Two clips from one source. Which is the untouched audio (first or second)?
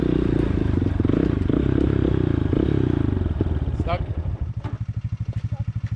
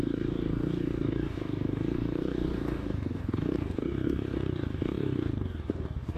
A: first